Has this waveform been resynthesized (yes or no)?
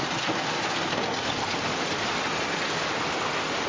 no